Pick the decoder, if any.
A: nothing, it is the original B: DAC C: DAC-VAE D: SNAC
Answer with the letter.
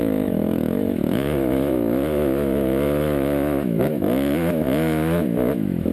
C